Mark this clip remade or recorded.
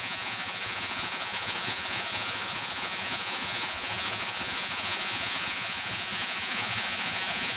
remade